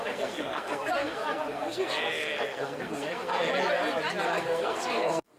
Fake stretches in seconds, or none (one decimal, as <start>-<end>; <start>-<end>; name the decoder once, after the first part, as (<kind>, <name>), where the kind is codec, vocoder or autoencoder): 0.0-3.5 (codec, SNAC); 4.2-5.4